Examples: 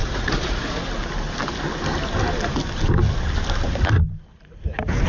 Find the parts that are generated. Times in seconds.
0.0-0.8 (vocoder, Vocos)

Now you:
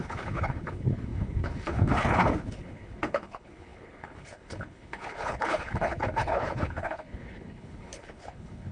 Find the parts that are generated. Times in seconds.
0.0-8.7 (codec, HILCodec)